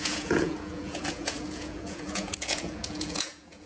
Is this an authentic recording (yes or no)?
no